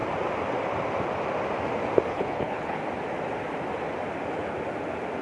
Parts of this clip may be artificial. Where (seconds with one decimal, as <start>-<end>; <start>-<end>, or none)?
2.1-2.8